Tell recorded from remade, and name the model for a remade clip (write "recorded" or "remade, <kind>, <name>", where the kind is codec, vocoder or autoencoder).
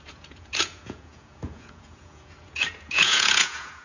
remade, vocoder, Vocos